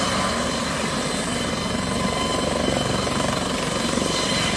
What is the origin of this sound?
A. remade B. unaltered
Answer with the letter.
B